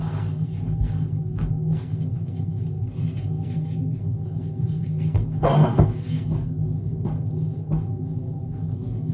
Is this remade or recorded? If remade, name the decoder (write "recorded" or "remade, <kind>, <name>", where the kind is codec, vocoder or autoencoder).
remade, codec, SNAC